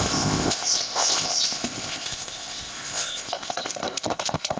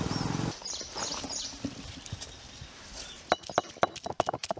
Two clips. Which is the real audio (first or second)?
second